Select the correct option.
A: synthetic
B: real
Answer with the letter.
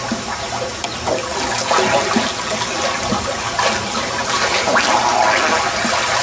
B